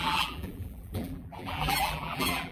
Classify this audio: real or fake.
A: fake